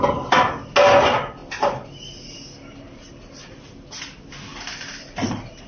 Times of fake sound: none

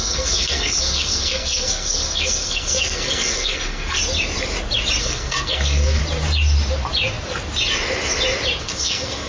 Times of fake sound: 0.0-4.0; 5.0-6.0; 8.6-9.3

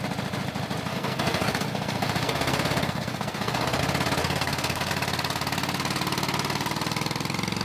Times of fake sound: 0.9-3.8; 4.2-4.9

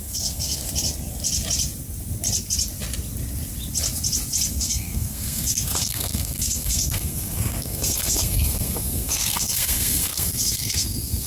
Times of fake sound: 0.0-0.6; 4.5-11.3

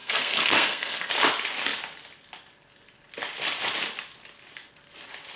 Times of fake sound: 0.0-1.1

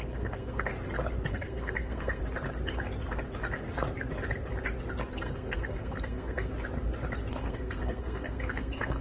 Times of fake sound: 0.0-0.7; 1.3-2.2; 5.1-6.5; 7.3-9.0

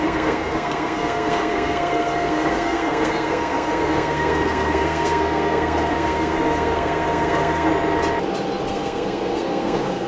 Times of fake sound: 0.0-7.7; 8.7-10.1

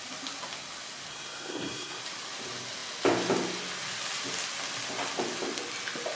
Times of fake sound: 1.1-2.0